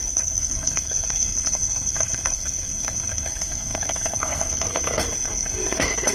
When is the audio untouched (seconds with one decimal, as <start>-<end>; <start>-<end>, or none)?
none